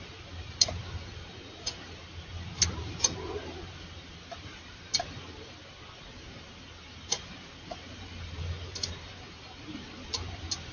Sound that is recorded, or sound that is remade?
remade